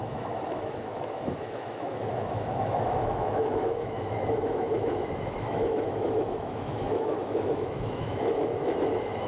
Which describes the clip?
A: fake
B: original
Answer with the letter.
A